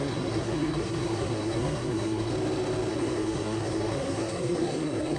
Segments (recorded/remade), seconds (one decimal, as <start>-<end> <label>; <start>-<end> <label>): 0.0-2.3 remade; 2.3-2.9 recorded; 2.9-5.2 remade